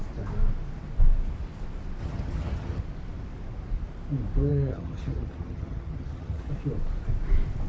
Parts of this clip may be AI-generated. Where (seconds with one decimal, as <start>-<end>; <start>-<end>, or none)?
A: 2.0-2.8; 4.5-6.5

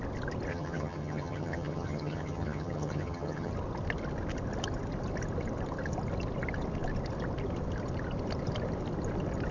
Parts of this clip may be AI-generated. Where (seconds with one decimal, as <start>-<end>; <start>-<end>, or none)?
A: 0.5-3.5

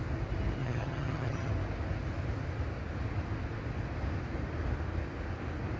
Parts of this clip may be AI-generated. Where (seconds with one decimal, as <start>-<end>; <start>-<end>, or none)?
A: 0.6-1.5